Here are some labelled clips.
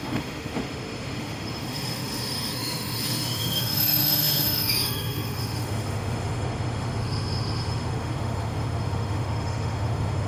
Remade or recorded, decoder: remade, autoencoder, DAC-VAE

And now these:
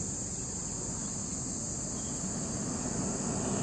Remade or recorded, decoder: recorded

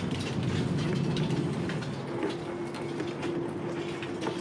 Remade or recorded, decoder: recorded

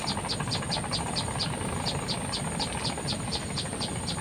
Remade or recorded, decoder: recorded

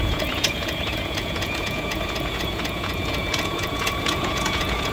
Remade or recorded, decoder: remade, vocoder, Vocos